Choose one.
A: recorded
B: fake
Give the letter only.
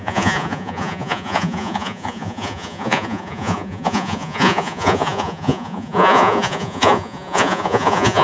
B